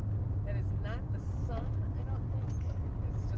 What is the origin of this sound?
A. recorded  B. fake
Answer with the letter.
A